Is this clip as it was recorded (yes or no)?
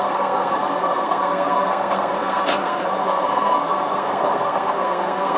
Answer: no